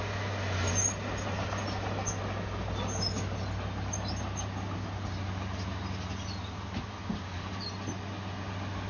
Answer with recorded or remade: recorded